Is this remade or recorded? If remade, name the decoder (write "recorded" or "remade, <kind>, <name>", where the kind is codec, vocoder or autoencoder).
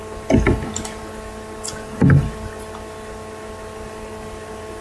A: recorded